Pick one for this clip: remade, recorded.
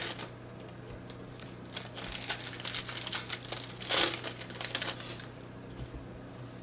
recorded